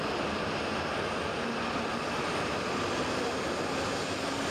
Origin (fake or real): real